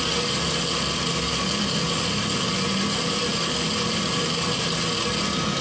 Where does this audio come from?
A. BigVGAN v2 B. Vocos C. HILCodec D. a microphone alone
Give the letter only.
D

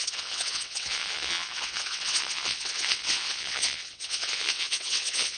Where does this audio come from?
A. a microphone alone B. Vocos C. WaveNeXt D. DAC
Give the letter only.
C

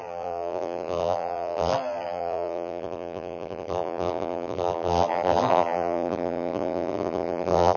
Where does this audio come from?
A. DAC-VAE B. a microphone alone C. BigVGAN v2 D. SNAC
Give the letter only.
C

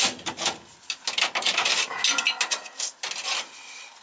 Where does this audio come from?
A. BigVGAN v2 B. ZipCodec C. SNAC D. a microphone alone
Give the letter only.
D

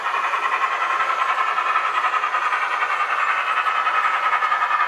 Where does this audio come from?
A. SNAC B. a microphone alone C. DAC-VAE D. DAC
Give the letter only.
B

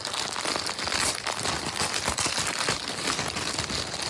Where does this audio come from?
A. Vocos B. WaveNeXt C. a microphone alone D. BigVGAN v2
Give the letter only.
C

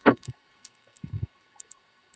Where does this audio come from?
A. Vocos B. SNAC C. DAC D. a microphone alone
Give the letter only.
B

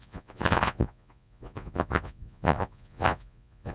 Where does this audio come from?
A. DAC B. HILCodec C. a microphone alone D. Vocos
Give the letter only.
D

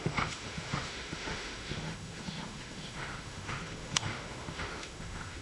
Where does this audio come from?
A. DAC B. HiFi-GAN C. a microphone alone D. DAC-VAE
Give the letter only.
D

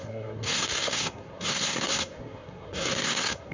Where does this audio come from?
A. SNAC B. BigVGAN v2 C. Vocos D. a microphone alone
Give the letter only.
A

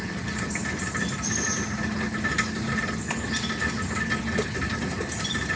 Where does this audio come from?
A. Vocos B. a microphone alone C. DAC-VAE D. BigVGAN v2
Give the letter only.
B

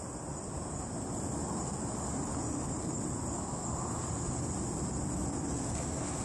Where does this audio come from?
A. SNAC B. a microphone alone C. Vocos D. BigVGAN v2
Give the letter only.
B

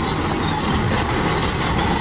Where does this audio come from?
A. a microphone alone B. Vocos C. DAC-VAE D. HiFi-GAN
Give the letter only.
A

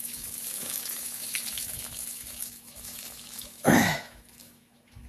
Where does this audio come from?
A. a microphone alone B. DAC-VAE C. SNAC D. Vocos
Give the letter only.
B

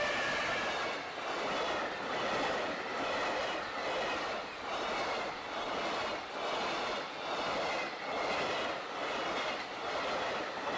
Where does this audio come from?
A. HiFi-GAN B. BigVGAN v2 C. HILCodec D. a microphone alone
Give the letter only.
D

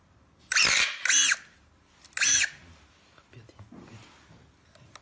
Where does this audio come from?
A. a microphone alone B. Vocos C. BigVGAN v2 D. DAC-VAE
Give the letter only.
A